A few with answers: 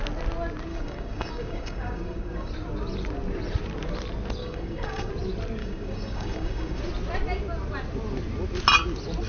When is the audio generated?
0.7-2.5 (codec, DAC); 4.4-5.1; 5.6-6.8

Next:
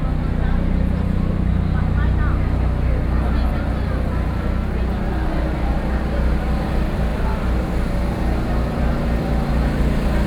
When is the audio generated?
none

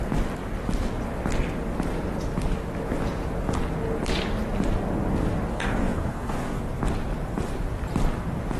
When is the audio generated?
5.5-6.6 (codec, DAC)

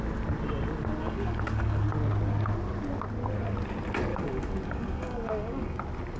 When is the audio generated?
1.0-1.8 (codec, DAC); 4.1-5.8

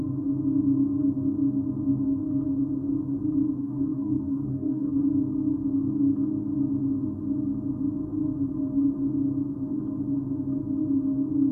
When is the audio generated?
3.6-5.0 (codec, DAC)

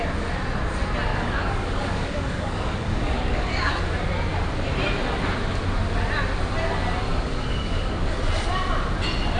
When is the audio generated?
1.1-3.8 (codec, DAC); 7.1-8.2

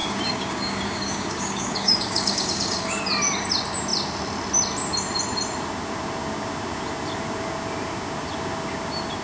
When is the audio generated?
0.0-3.0 (codec, DAC)